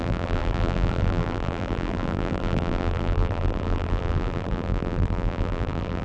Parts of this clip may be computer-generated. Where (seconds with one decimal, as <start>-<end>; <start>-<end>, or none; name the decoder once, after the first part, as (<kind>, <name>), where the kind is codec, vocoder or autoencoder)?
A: 0.0-6.0 (vocoder, BigVGAN v2)